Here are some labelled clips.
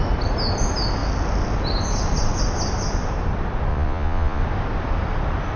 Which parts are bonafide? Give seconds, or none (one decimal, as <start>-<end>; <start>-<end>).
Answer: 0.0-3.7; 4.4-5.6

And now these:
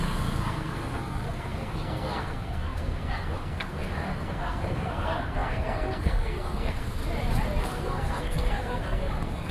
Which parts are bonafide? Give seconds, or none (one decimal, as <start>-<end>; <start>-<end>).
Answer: 7.0-7.6

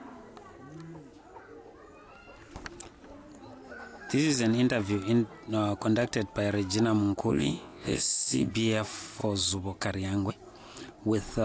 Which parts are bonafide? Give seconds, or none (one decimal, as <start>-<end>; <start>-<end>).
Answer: 0.0-7.3; 8.5-11.4

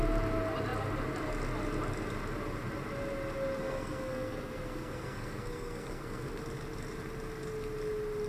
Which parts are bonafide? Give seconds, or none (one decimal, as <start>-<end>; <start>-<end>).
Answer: 0.0-3.6; 6.3-8.3

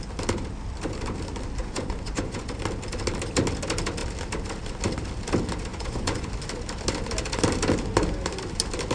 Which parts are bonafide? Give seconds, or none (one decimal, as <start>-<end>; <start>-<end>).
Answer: 0.0-1.6; 2.6-5.7; 6.3-8.9

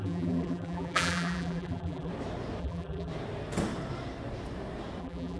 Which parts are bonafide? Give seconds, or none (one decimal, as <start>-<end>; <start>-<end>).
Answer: 2.1-2.6; 3.1-5.0

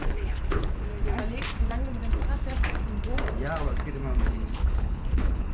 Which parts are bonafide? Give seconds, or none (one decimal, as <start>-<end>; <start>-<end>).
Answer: 0.9-4.2

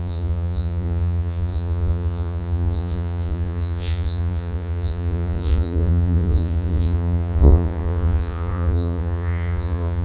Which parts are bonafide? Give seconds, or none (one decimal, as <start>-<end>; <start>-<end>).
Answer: none